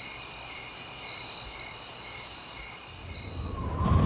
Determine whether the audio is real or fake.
real